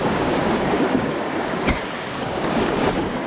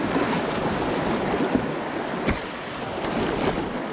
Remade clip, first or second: first